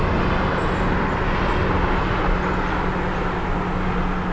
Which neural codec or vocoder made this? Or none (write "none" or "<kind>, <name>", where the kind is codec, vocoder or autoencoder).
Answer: none